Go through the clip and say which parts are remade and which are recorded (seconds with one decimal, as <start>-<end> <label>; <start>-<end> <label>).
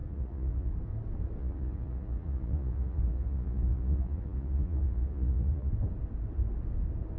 0.0-0.7 remade; 0.7-1.4 recorded; 1.4-5.7 remade; 5.7-7.2 recorded